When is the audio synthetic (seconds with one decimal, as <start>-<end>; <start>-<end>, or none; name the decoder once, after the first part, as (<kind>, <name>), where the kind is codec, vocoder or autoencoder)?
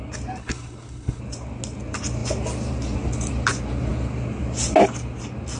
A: 0.4-1.2 (codec, HILCodec)